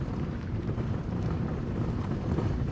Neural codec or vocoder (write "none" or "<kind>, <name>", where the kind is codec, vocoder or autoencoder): vocoder, BigVGAN v2